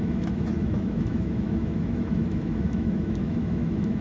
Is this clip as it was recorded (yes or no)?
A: no